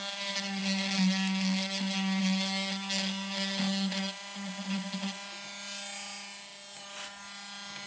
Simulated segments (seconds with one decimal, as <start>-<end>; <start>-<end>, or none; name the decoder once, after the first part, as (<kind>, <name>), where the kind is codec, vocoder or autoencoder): none